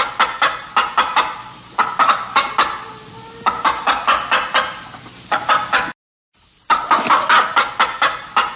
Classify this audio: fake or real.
real